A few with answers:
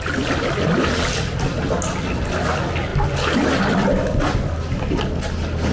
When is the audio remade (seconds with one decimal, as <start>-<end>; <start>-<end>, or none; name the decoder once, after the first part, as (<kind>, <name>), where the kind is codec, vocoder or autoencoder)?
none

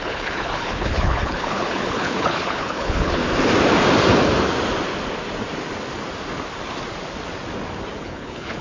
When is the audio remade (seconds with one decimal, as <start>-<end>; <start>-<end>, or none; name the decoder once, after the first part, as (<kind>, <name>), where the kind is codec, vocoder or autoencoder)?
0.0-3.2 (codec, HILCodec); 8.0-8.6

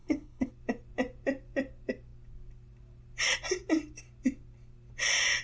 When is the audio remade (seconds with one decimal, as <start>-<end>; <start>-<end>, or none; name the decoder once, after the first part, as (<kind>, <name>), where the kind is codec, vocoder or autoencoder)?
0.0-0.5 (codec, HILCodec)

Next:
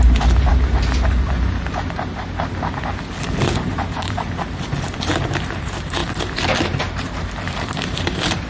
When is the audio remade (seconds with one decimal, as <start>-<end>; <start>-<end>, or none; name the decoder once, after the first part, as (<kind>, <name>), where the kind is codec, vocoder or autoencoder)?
0.0-0.5 (vocoder, BigVGAN v2); 3.7-4.7; 5.6-6.0; 6.8-8.5